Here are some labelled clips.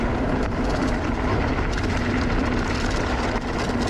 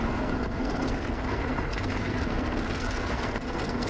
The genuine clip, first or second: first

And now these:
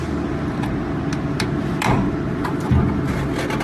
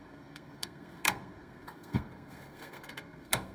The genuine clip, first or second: first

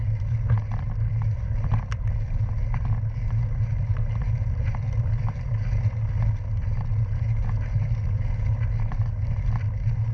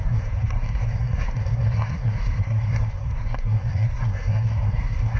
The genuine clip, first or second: first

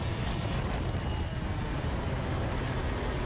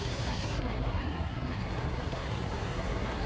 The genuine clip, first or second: first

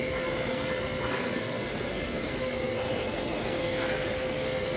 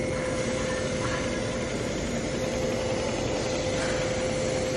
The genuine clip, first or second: second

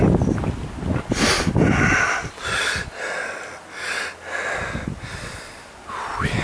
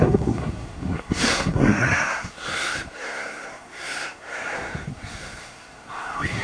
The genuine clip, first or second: first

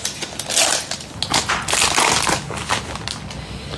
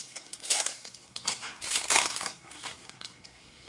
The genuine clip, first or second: first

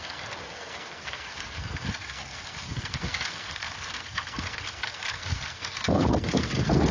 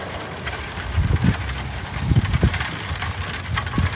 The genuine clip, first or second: second